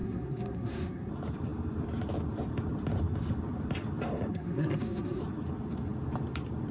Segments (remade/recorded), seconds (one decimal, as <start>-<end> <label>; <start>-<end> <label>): 0.0-1.1 remade; 1.1-4.3 recorded; 4.3-5.2 remade; 5.2-6.7 recorded